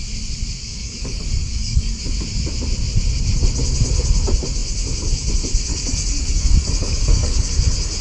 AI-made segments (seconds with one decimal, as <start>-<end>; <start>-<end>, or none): 0.6-2.0; 5.7-7.5

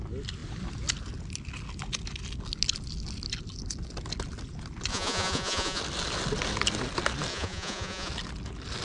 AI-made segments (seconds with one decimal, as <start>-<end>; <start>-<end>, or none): 4.9-5.8; 7.3-8.1

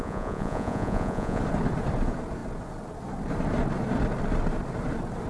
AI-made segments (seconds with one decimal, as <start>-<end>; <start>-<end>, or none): 0.0-1.4

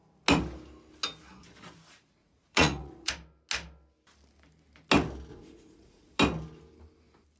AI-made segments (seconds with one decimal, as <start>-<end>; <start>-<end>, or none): 2.2-3.1; 5.3-6.2

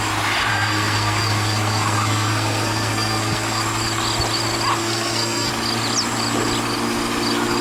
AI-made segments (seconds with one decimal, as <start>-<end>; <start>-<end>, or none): 0.5-3.6; 4.8-5.5

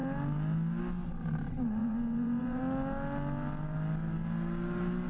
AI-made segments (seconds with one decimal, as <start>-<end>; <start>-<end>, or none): 1.8-2.6

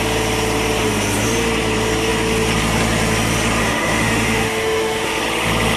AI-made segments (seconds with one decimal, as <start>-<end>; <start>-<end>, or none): 3.6-5.2

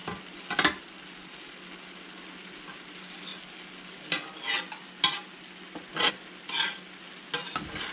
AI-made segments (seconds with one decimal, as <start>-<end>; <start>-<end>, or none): none